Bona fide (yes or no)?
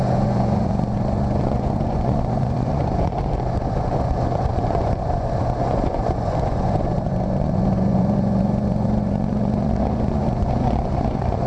no